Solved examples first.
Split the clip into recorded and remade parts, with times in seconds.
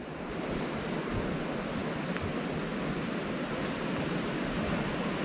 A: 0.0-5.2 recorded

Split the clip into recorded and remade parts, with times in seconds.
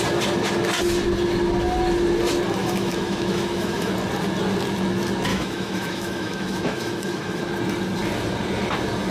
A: 0.0-2.6 recorded; 2.6-3.9 remade; 3.9-5.3 recorded; 5.3-7.4 remade; 7.4-9.1 recorded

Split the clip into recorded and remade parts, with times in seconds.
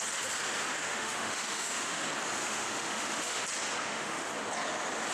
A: 0.0-0.8 recorded; 0.8-2.0 remade; 2.0-2.4 recorded; 2.4-3.4 remade; 3.4-3.8 recorded; 3.8-4.3 remade; 4.3-5.1 recorded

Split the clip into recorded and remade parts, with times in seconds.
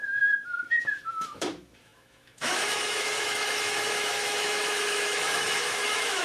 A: 0.0-6.2 remade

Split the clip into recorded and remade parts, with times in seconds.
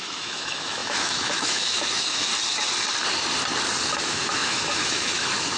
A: 0.0-2.3 remade; 2.3-4.0 recorded; 4.0-5.6 remade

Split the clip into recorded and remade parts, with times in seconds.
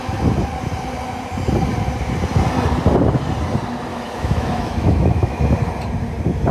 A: 0.0-3.9 recorded; 3.9-5.4 remade; 5.4-6.5 recorded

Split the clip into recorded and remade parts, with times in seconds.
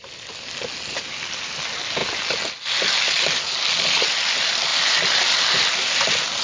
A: 0.0-6.4 recorded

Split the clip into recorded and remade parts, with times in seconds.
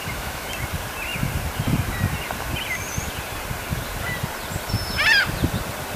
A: 0.0-0.5 remade; 0.5-6.0 recorded